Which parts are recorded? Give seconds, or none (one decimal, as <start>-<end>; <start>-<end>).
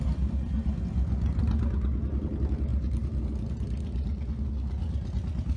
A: 0.0-2.7; 3.2-5.6